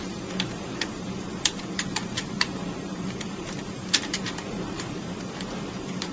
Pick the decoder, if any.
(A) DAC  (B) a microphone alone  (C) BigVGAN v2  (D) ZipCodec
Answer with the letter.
C